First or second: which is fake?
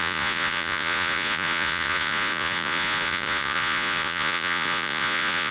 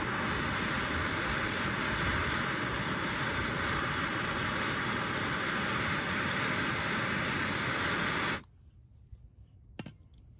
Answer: first